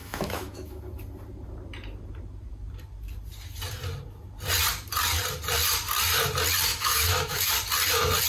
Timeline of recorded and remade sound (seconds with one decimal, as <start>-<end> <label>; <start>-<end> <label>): 0.0-0.8 remade; 0.8-6.7 recorded; 6.7-7.5 remade; 7.5-8.3 recorded

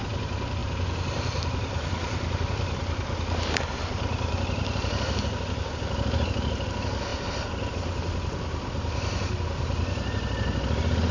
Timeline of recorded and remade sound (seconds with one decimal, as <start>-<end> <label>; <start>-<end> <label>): 0.0-0.6 recorded; 0.6-2.3 remade; 2.3-11.1 recorded

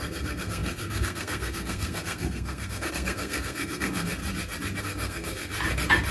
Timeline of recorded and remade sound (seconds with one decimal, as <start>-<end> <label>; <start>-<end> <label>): 0.0-4.2 remade; 4.2-4.8 recorded; 4.8-5.5 remade; 5.5-6.1 recorded

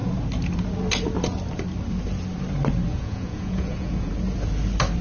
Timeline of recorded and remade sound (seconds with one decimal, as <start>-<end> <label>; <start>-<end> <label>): 0.0-2.9 recorded; 2.9-4.1 remade; 4.1-5.0 recorded

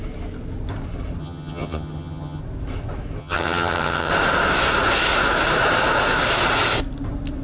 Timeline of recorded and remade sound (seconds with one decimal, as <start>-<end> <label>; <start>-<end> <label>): 0.0-1.2 recorded; 1.2-2.4 remade; 2.4-3.2 recorded; 3.2-4.1 remade; 4.1-7.4 recorded